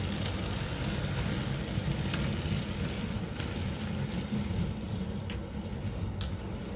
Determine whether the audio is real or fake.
real